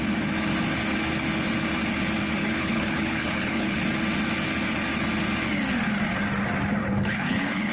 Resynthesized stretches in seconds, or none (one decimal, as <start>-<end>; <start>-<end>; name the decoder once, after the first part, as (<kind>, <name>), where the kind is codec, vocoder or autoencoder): 2.4-3.8 (codec, HILCodec); 6.8-7.7

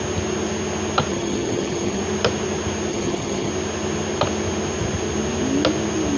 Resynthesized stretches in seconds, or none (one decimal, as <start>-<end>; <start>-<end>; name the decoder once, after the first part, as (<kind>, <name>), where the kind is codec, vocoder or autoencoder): 1.1-2.0 (vocoder, HiFi-GAN); 2.9-3.5

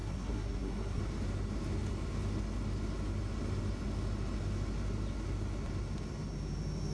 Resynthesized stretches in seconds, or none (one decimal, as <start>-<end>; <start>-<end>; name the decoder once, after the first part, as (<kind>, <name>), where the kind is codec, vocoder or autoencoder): 0.0-1.0 (codec, SNAC)

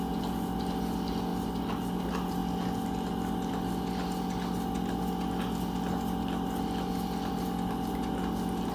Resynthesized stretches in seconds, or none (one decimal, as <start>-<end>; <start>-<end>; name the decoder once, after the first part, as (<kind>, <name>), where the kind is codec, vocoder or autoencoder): none

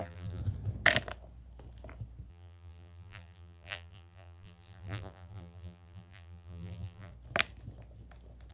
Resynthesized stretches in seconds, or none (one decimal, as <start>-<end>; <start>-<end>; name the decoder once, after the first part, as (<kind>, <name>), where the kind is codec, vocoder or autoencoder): 0.0-0.4 (vocoder, BigVGAN v2); 2.3-7.1

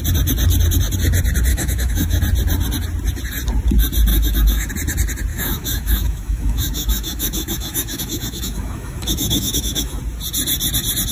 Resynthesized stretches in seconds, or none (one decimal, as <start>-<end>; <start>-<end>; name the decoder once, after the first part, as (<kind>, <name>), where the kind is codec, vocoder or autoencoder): 1.5-2.2 (autoencoder, DAC-VAE); 4.1-4.7; 5.3-10.0

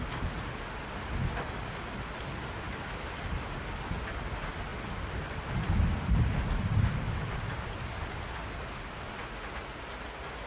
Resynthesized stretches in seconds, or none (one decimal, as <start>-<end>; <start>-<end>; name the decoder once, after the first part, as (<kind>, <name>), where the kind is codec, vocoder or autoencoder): 4.7-7.4 (vocoder, BigVGAN v2)